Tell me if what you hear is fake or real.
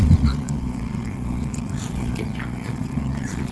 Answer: fake